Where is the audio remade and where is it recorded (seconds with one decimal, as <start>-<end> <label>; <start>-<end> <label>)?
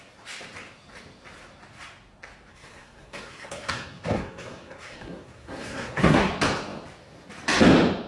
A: 0.0-2.5 recorded; 2.5-6.3 remade; 6.3-8.1 recorded